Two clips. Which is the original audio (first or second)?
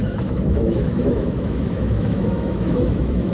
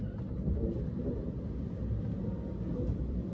second